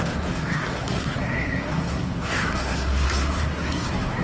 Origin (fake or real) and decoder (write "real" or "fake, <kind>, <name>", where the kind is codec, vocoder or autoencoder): fake, codec, SNAC